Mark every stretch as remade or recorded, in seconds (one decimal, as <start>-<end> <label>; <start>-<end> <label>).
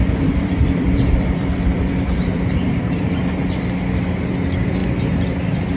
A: 0.0-3.3 remade; 3.3-5.8 recorded